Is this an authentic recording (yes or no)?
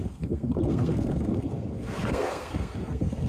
no